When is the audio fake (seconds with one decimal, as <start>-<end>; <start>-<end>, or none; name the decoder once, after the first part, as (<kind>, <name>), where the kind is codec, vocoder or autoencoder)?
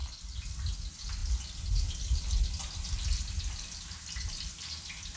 0.0-0.7 (vocoder, BigVGAN v2)